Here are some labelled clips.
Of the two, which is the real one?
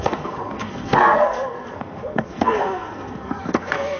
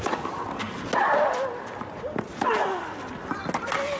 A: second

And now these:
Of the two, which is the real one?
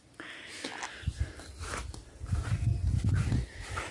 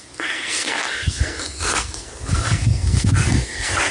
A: first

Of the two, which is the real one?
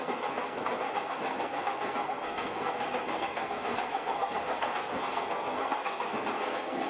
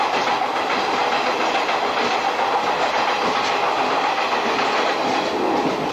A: second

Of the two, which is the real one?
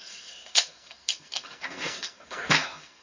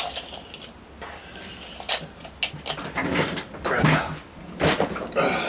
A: second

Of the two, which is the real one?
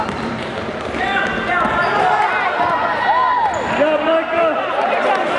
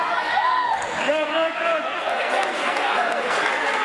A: first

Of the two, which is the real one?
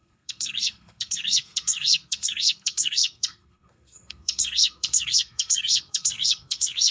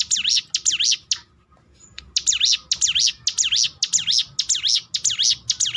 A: second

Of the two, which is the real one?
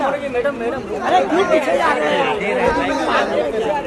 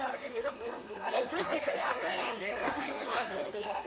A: first